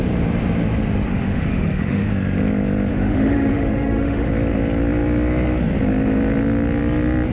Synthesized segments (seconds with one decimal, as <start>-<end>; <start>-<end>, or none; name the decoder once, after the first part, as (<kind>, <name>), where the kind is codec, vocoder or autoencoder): 1.1-2.1 (autoencoder, DAC-VAE); 2.9-4.3